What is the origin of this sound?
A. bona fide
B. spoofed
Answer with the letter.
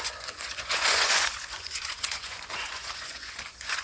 B